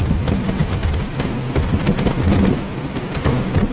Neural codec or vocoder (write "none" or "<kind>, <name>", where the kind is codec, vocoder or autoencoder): none